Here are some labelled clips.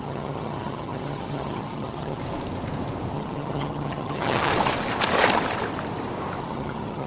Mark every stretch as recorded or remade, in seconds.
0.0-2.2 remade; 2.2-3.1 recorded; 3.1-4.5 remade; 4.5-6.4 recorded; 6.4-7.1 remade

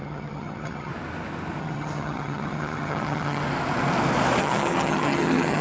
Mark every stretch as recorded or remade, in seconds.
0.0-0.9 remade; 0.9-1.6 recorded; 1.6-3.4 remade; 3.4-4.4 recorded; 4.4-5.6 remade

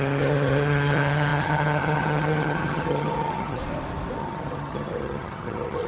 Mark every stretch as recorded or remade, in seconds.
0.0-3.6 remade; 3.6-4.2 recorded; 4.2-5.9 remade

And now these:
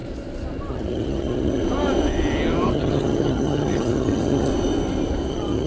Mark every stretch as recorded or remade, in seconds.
0.0-0.7 recorded; 0.7-1.6 remade; 1.6-2.7 recorded; 2.7-4.5 remade; 4.5-5.3 recorded; 5.3-5.7 remade

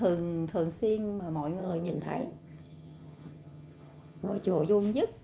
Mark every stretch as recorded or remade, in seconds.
0.0-1.6 recorded; 1.6-4.7 remade; 4.7-5.2 recorded